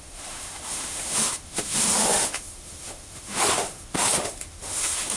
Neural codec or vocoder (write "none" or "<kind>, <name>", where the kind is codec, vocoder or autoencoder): autoencoder, DAC-VAE